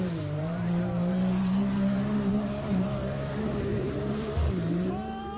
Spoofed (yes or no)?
yes